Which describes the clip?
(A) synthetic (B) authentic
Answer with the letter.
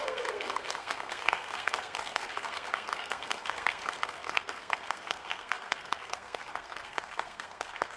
A